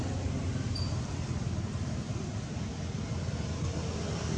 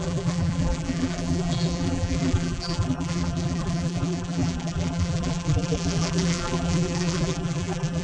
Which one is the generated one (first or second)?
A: second